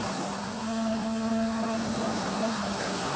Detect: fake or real fake